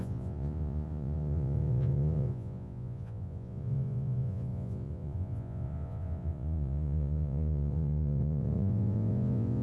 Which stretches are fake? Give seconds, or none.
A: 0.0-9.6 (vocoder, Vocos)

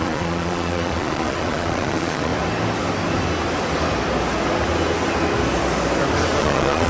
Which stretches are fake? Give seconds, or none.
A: 0.0-2.3 (vocoder, Vocos); 6.4-6.9

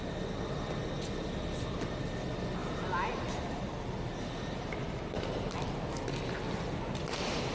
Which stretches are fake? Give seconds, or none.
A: none

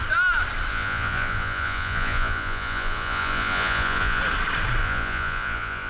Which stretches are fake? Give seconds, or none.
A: 0.7-4.2 (vocoder, Vocos); 4.8-5.9

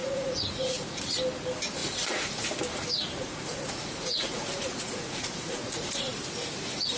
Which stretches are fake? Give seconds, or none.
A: 0.0-1.0 (vocoder, Vocos); 1.8-2.5; 3.2-6.2

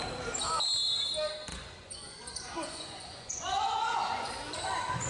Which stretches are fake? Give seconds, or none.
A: 1.5-4.3 (vocoder, Vocos)

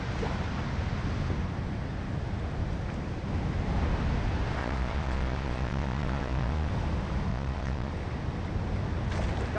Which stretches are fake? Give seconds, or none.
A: 4.6-6.7 (vocoder, Vocos); 7.3-7.9

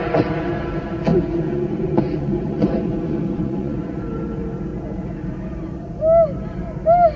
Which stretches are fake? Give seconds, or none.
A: 1.1-4.0 (vocoder, Vocos)